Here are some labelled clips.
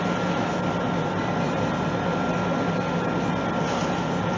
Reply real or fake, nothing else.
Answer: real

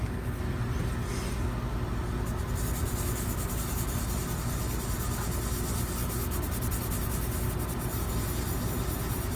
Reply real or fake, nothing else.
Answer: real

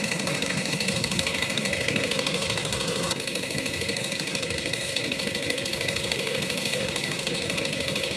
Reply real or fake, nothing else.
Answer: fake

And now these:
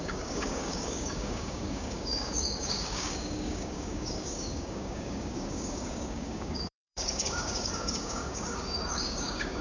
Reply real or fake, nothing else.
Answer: fake